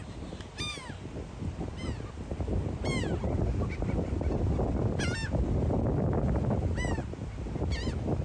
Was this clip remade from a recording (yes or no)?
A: no